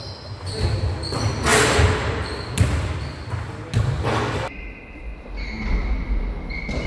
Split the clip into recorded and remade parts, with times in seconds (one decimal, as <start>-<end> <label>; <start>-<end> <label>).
0.0-6.9 recorded